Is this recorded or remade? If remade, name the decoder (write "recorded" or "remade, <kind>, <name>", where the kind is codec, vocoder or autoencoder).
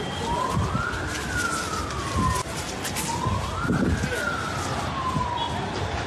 recorded